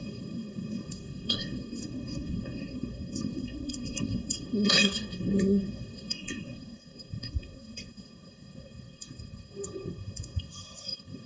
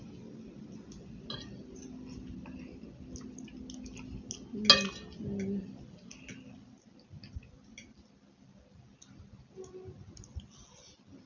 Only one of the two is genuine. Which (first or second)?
second